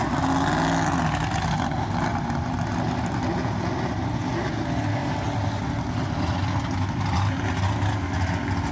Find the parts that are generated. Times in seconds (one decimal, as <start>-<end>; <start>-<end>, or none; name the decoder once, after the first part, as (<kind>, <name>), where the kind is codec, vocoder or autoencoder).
none